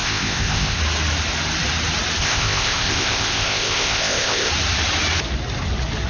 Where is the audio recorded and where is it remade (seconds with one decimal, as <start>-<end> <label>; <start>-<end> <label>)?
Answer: 0.0-0.8 remade; 0.8-2.2 recorded; 2.2-4.5 remade; 4.5-6.1 recorded